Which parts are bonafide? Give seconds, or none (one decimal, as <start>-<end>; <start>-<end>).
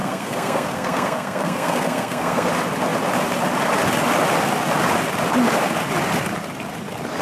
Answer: 2.5-7.2